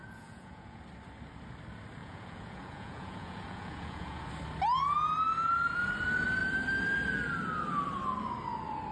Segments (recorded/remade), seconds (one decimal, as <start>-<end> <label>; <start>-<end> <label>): 0.0-0.8 remade; 0.8-2.0 recorded; 2.0-4.3 remade; 4.3-8.9 recorded